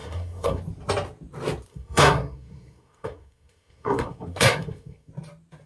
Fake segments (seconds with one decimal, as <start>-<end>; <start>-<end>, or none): 0.0-0.6; 1.7-5.1